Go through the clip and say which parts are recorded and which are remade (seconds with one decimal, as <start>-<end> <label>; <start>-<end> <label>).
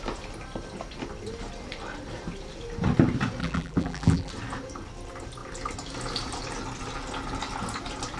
0.0-3.4 recorded; 3.4-4.3 remade; 4.3-8.2 recorded